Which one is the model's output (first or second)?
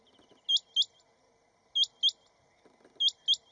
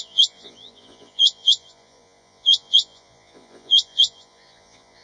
second